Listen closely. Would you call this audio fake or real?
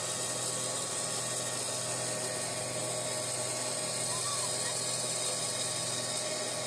real